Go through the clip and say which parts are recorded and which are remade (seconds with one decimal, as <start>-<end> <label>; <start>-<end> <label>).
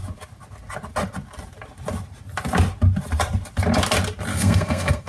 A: 0.0-4.3 recorded; 4.3-5.1 remade